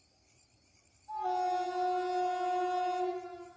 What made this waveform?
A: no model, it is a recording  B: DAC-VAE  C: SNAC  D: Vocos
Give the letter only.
A